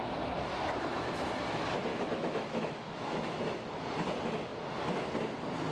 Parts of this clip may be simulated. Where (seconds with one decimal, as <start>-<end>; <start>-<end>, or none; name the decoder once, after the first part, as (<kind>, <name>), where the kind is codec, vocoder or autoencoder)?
1.9-3.4 (autoencoder, DAC-VAE)